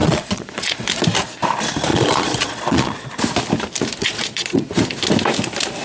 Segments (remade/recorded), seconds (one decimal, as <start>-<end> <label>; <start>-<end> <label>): 0.0-0.8 remade; 0.8-1.9 recorded; 1.9-3.1 remade; 3.1-4.0 recorded; 4.0-4.7 remade; 4.7-5.8 recorded